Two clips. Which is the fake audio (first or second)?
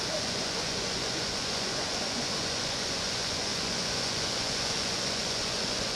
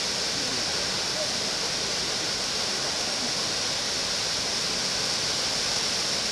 first